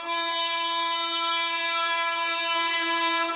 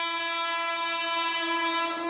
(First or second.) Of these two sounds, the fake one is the first